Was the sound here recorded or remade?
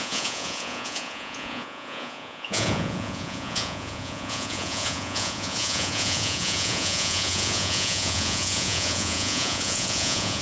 remade